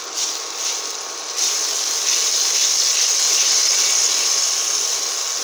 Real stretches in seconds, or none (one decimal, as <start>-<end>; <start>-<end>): 0.0-5.4